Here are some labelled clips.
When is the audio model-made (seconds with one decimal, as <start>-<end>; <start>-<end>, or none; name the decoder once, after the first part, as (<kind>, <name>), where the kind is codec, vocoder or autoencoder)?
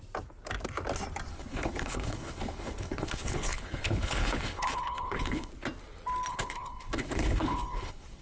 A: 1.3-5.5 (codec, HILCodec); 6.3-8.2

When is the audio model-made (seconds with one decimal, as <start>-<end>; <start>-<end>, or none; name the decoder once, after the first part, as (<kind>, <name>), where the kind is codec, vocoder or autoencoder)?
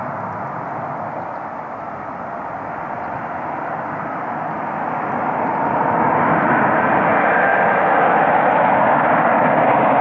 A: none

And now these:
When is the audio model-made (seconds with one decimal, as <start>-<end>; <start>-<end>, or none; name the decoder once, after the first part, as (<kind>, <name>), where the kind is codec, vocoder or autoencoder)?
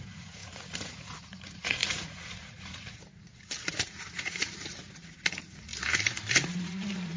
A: 0.0-3.3 (vocoder, Vocos); 4.1-5.7; 6.3-7.2